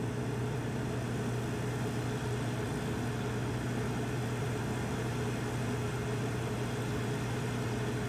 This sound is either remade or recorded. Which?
recorded